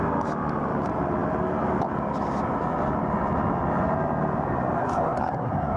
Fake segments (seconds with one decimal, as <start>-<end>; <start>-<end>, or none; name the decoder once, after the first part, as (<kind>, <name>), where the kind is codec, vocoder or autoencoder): 4.8-5.8 (codec, SNAC)